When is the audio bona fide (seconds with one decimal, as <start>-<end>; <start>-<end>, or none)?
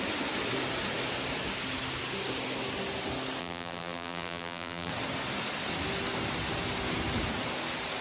0.0-3.4; 4.9-8.0